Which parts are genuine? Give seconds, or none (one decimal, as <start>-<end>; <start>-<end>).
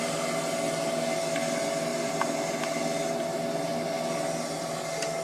0.0-5.2